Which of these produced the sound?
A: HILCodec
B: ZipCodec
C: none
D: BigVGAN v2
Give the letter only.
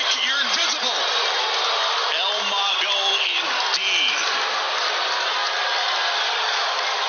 D